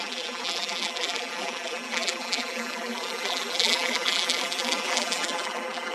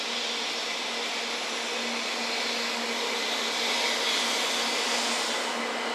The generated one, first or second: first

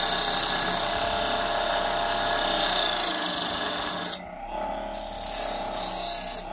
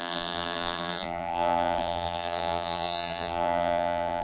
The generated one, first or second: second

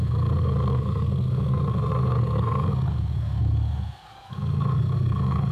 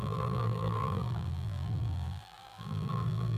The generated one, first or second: second